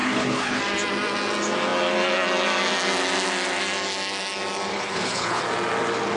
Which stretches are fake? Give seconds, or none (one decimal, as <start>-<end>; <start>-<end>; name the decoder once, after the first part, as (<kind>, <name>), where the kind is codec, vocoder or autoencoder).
0.0-0.6 (codec, HILCodec); 4.7-5.4